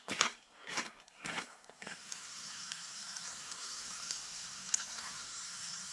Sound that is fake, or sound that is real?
fake